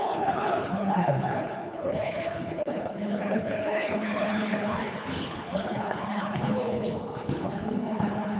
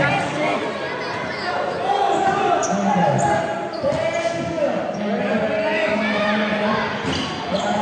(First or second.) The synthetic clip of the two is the first